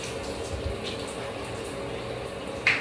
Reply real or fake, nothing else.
real